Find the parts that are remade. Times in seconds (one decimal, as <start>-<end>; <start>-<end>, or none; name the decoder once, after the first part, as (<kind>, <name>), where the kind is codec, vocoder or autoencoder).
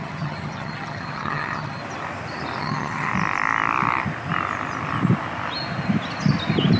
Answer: 0.0-1.8 (vocoder, HiFi-GAN); 2.6-3.1